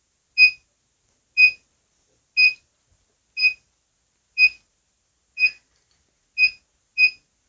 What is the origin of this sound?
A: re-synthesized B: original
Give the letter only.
B